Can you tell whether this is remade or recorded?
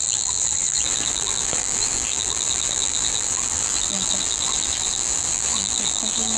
remade